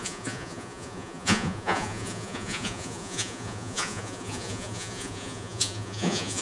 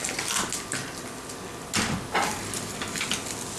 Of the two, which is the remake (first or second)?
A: first